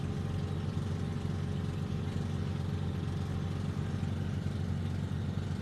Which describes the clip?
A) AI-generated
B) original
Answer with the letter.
B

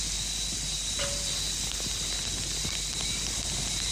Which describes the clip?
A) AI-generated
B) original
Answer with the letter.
B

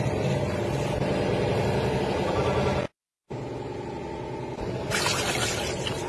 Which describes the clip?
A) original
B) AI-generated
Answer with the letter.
A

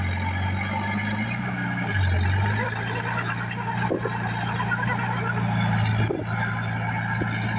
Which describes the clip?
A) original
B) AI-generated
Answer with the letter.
A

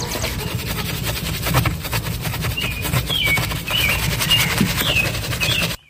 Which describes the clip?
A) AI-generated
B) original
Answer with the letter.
B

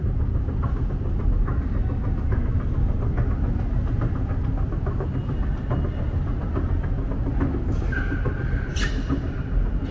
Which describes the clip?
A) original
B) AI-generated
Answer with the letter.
A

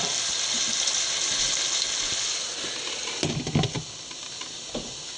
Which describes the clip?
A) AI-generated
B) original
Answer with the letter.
B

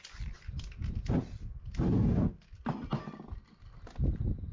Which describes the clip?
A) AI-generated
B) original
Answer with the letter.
B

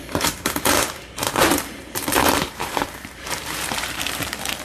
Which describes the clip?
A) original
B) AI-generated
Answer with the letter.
B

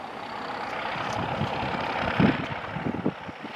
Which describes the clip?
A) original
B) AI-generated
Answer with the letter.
A